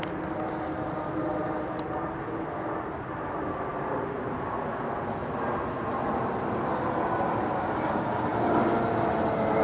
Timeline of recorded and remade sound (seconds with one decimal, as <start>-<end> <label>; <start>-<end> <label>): 0.0-9.6 recorded